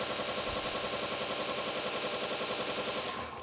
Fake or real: real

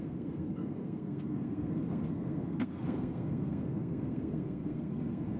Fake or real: fake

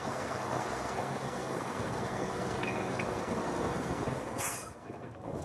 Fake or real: fake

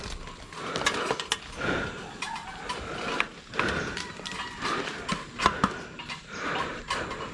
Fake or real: real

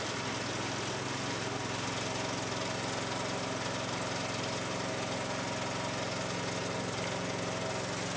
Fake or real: real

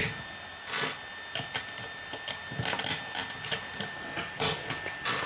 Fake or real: real